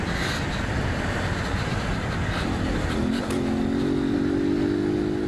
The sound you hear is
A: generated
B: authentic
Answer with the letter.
B